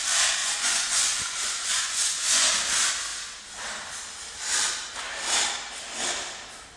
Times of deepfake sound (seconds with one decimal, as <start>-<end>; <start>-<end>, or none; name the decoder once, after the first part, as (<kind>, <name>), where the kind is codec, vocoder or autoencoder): 0.4-2.5 (vocoder, Vocos)